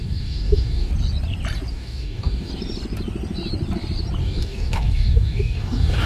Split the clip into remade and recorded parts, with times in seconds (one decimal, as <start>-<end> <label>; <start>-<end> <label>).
0.0-0.9 remade; 0.9-1.7 recorded; 1.7-2.5 remade; 2.5-4.2 recorded; 4.2-6.1 remade